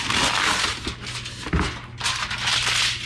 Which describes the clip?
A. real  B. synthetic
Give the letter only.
A